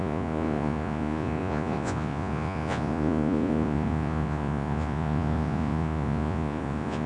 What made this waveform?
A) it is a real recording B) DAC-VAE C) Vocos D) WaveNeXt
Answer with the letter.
C